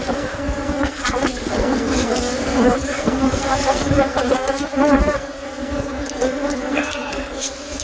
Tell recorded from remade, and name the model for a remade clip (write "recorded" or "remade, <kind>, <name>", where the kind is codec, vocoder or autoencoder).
remade, codec, SNAC